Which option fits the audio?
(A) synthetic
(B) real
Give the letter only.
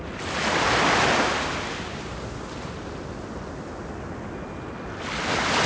B